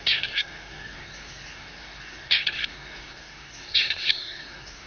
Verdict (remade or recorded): remade